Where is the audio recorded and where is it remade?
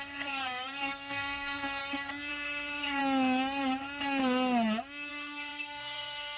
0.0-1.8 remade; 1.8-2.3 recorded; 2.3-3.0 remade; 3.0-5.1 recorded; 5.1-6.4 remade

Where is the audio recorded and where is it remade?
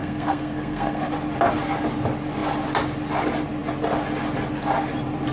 0.0-1.1 remade; 1.1-5.3 recorded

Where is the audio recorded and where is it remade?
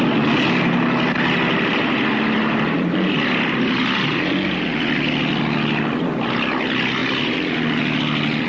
0.0-8.5 recorded